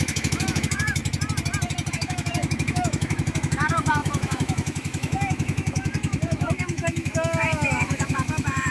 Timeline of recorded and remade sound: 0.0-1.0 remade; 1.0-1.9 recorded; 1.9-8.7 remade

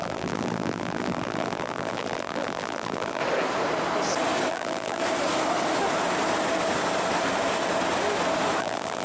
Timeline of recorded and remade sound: 0.0-3.2 remade; 3.2-4.5 recorded; 4.5-5.0 remade; 5.0-8.6 recorded; 8.6-9.0 remade

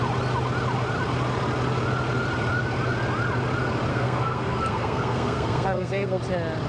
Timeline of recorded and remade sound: 0.0-3.9 recorded; 3.9-6.2 remade; 6.2-6.7 recorded

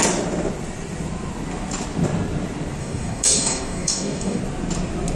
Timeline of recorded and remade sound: 0.0-2.8 recorded; 2.8-4.4 remade; 4.4-5.2 recorded